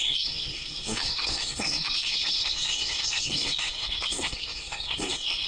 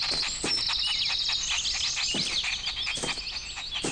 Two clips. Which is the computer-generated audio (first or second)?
first